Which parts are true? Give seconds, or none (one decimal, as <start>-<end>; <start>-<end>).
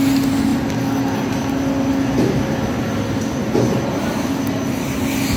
0.0-5.4